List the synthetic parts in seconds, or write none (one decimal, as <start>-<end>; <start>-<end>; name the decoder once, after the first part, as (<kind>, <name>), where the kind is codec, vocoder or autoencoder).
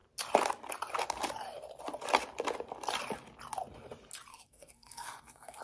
4.3-5.6 (codec, SNAC)